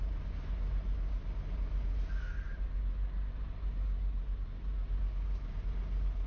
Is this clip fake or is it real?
real